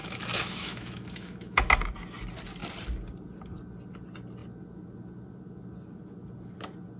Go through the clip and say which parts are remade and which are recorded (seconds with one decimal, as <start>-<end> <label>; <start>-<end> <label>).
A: 0.0-1.7 remade; 1.7-7.0 recorded